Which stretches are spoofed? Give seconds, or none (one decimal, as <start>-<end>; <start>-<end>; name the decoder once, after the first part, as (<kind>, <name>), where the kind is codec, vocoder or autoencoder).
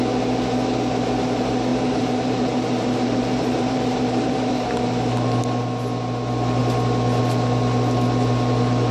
1.7-4.5 (vocoder, BigVGAN v2)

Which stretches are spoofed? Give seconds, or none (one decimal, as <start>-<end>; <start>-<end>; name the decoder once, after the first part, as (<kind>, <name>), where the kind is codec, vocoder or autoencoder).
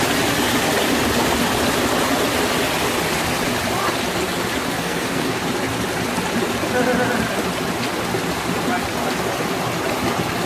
4.8-5.4 (codec, SNAC)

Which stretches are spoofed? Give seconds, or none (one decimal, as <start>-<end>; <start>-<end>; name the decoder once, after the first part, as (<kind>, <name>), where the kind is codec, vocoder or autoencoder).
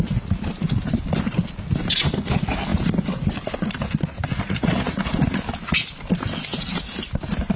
4.2-5.2 (vocoder, Vocos)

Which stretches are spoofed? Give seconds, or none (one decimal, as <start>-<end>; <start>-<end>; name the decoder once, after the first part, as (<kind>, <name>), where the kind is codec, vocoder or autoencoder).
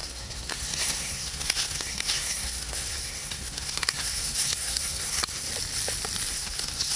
0.0-5.5 (codec, SNAC); 6.3-7.0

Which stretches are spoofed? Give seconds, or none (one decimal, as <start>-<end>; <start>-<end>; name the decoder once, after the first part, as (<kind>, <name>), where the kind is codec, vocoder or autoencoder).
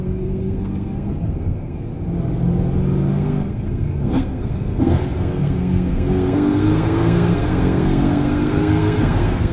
0.0-1.9 (codec, SNAC); 3.1-9.5